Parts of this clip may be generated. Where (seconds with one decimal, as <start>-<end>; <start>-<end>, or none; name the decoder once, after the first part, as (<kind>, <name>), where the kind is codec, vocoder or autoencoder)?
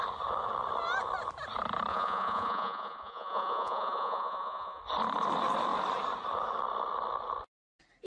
1.9-4.8 (vocoder, Vocos)